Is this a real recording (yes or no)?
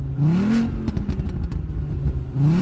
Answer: yes